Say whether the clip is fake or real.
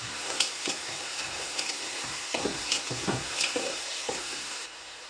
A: fake